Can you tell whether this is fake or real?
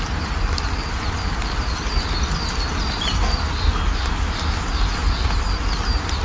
real